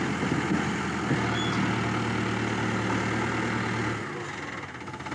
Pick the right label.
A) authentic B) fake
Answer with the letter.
A